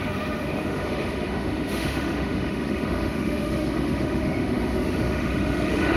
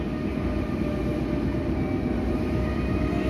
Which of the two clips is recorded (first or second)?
second